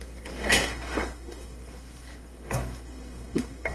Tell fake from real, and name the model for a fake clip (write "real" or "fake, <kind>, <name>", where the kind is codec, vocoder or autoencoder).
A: fake, codec, SNAC